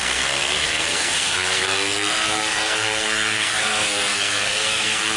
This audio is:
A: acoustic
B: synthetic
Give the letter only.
B